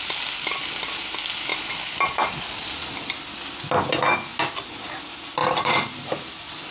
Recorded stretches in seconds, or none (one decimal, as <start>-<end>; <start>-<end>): 0.0-1.5; 3.7-5.4